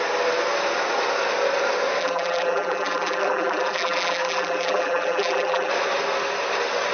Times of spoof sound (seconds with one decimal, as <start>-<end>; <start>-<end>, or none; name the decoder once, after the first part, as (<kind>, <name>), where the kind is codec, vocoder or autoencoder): 2.0-5.7 (vocoder, BigVGAN v2)